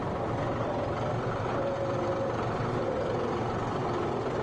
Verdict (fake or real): fake